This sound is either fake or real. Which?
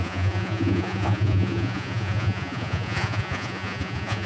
fake